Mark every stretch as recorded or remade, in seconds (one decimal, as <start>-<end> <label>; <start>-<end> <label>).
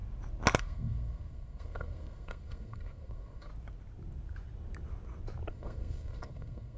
0.0-0.6 recorded; 0.6-3.5 remade; 3.5-5.5 recorded; 5.5-6.8 remade